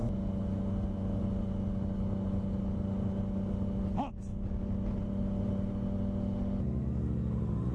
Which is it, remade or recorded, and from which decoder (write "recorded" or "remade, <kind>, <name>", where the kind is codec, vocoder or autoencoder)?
recorded